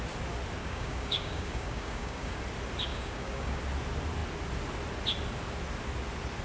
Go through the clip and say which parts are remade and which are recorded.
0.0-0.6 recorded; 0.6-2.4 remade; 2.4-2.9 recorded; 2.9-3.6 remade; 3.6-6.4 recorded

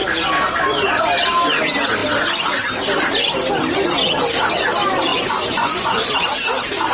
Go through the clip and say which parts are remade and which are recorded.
0.0-5.1 recorded; 5.1-6.1 remade; 6.1-6.9 recorded

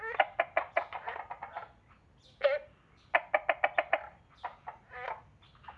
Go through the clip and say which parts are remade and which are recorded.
0.0-5.8 recorded

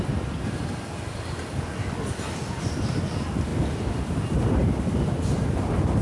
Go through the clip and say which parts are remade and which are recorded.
0.0-3.5 remade; 3.5-4.0 recorded; 4.0-4.6 remade; 4.6-5.2 recorded; 5.2-6.0 remade

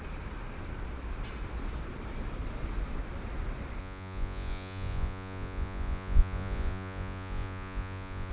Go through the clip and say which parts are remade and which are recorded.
0.0-3.8 recorded; 3.8-8.3 remade